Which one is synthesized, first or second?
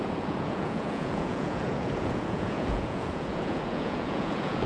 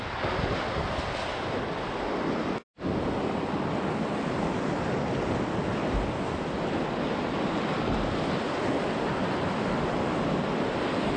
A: first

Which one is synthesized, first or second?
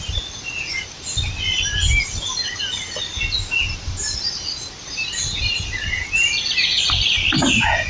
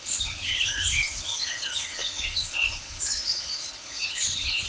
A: second